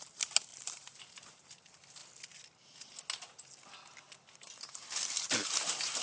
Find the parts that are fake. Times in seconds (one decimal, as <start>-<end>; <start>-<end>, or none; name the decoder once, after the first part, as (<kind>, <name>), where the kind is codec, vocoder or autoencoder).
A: 0.0-2.0 (vocoder, BigVGAN v2); 4.3-6.0

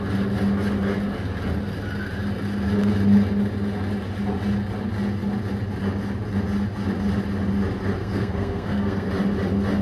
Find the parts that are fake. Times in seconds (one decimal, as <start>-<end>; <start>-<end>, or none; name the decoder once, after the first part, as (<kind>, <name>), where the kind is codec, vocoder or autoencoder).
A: 8.0-9.1 (codec, SNAC)

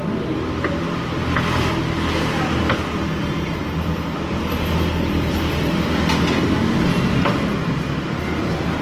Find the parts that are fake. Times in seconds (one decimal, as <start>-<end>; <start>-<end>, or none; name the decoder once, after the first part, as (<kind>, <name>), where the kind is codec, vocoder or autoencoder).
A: none

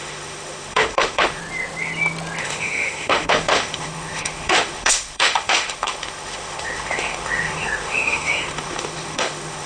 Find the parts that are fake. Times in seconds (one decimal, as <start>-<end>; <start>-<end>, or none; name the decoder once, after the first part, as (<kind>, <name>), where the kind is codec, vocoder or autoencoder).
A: 0.0-1.4 (autoencoder, DAC-VAE); 2.4-9.7

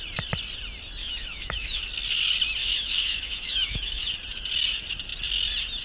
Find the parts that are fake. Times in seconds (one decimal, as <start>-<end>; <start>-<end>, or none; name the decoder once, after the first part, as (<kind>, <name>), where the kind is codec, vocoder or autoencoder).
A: 1.0-1.8 (autoencoder, DAC-VAE); 2.6-4.1

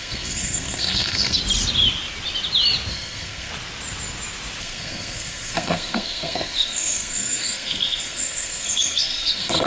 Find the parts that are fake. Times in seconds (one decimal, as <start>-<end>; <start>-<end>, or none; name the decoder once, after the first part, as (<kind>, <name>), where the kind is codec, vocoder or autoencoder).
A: 0.0-1.4 (codec, SNAC); 2.9-3.5; 4.6-9.7

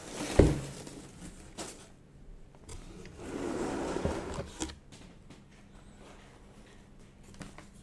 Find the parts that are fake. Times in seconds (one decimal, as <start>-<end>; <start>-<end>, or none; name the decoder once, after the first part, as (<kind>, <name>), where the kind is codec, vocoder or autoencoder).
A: none

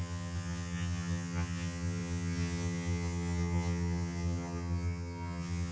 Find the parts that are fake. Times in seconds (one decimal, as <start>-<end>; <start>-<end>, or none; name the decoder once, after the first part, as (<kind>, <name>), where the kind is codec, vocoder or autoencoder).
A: 0.0-5.7 (vocoder, HiFi-GAN)